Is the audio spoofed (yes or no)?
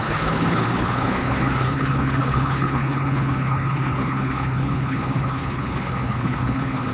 yes